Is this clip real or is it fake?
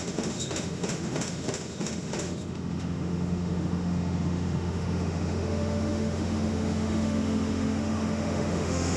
fake